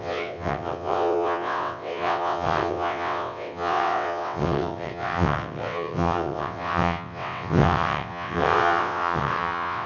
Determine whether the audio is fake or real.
fake